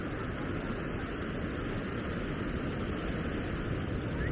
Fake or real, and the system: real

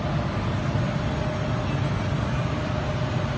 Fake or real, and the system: real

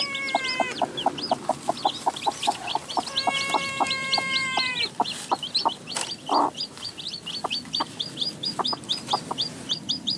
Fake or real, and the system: fake, vocoder, BigVGAN v2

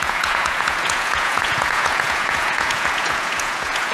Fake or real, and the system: fake, vocoder, Vocos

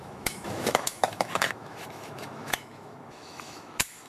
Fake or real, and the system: fake, autoencoder, DAC-VAE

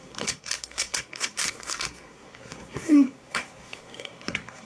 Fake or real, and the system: fake, codec, SNAC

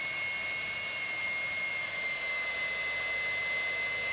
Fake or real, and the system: real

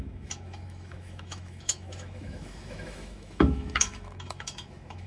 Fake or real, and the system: fake, autoencoder, DAC-VAE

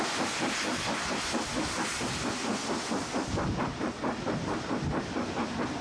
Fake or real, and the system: real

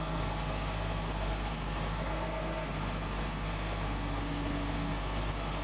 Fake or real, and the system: fake, codec, SNAC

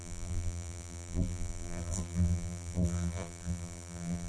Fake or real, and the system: fake, vocoder, BigVGAN v2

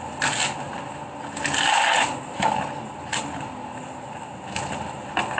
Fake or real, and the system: real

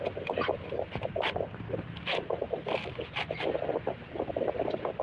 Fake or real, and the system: real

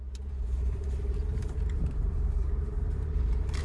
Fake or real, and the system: fake, vocoder, BigVGAN v2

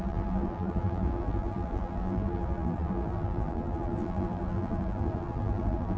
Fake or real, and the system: fake, vocoder, BigVGAN v2